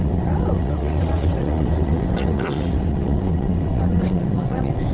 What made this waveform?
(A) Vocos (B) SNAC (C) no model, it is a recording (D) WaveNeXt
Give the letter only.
D